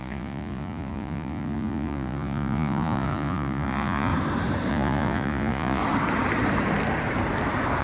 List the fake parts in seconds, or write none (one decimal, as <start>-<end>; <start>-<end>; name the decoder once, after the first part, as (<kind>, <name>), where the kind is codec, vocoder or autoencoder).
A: 0.0-4.1 (vocoder, Vocos); 4.7-5.8